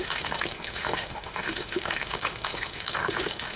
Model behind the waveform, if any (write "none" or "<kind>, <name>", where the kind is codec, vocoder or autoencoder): autoencoder, DAC-VAE